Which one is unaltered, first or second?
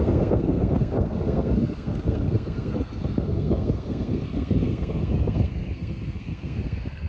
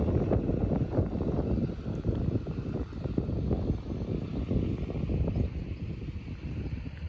second